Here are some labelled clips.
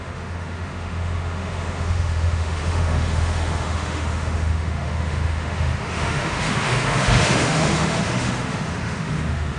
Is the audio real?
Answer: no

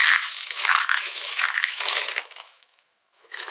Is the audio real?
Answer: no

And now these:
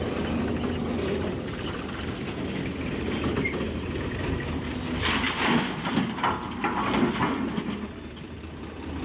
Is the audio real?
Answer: yes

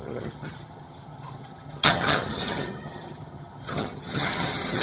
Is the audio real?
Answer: no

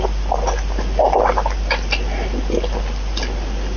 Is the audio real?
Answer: yes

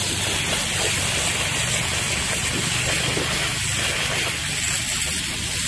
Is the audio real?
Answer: yes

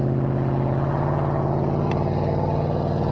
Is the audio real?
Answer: yes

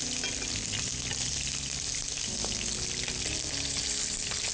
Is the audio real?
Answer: yes